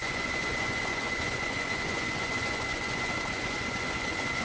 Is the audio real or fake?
fake